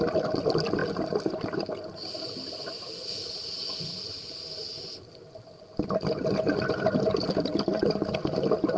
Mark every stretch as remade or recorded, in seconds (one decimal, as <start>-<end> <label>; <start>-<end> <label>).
0.0-8.8 recorded